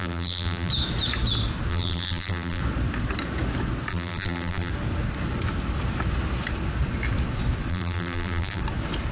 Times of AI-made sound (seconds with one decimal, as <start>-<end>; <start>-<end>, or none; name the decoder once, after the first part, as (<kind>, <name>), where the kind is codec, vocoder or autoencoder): 0.0-0.7 (vocoder, BigVGAN v2); 1.7-2.6; 3.9-4.7; 7.7-8.6